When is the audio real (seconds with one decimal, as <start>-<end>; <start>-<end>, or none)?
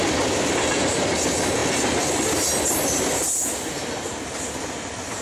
0.0-5.2